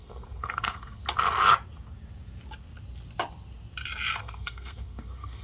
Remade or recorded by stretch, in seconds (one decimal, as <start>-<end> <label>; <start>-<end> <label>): 0.0-1.0 remade; 1.0-4.2 recorded; 4.2-5.4 remade